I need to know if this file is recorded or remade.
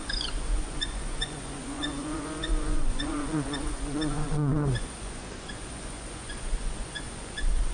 remade